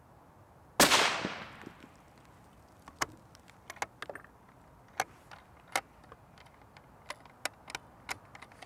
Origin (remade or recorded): recorded